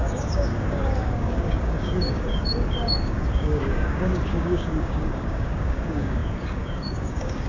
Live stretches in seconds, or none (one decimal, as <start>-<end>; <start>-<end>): none